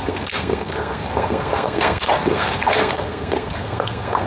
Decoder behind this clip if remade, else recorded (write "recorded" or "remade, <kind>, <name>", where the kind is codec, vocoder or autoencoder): remade, codec, SNAC